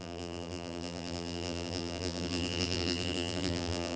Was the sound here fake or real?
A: fake